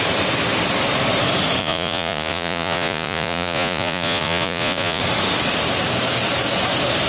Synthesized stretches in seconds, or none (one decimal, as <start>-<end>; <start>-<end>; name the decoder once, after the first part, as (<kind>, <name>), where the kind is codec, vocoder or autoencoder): 1.6-5.0 (vocoder, Vocos)